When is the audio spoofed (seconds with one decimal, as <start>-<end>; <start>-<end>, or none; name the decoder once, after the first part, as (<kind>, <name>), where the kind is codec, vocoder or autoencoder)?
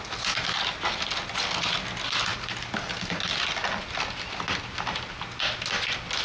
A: none